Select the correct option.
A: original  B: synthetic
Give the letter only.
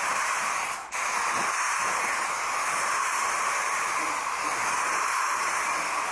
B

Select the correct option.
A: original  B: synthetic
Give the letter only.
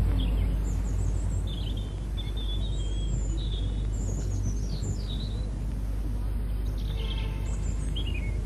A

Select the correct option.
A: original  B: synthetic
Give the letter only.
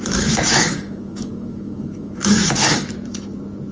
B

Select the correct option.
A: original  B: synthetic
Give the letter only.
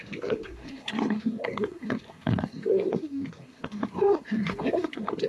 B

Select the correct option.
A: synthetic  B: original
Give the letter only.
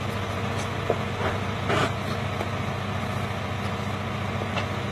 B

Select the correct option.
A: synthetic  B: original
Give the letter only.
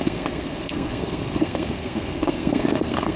A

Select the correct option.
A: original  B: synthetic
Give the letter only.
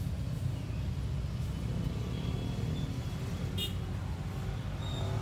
A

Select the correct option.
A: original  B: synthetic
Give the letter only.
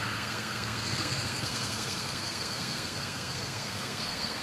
B